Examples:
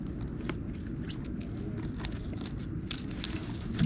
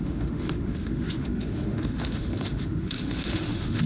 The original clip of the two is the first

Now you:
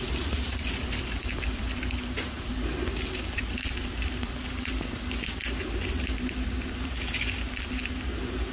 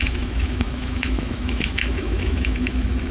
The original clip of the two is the first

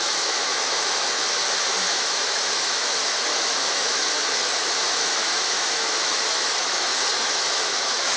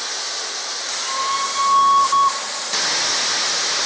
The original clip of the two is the second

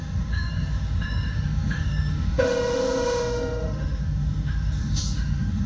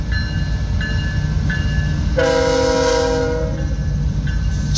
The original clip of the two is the second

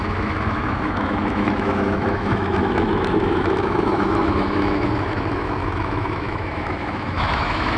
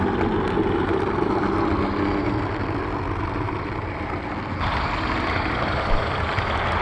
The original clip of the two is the second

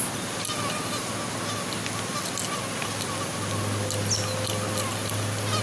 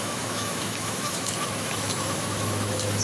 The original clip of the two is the first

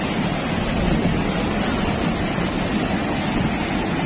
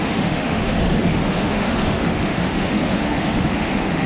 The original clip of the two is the first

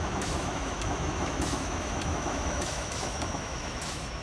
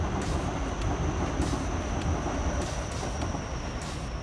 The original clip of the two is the second